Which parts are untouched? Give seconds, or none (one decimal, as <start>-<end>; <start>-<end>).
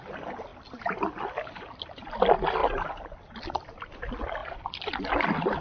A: 0.0-5.6